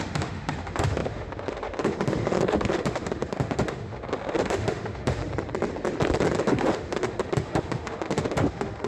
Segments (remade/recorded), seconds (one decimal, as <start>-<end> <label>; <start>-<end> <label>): 0.0-5.2 remade; 5.2-6.4 recorded; 6.4-8.9 remade